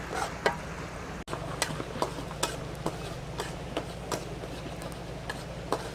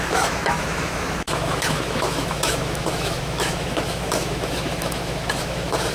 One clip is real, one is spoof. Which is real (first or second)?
first